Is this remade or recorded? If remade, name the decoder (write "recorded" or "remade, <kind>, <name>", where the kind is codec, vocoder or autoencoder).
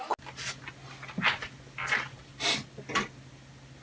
recorded